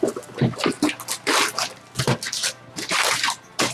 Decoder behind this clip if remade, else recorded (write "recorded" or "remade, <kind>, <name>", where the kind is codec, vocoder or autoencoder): recorded